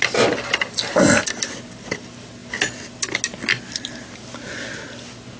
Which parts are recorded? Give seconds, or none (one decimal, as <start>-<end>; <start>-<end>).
0.0-5.4